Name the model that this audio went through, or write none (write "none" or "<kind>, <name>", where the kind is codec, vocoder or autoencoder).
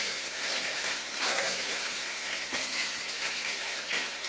codec, SNAC